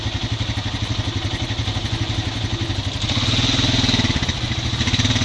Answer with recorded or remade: recorded